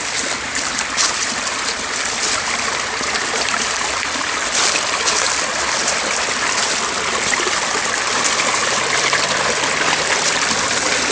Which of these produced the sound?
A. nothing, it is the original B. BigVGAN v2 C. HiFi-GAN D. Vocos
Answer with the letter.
A